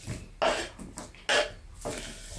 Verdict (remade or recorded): recorded